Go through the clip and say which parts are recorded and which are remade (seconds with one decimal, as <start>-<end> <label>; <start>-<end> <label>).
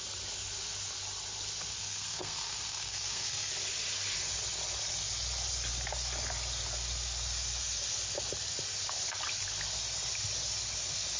0.0-1.7 recorded; 1.7-3.5 remade; 3.5-11.2 recorded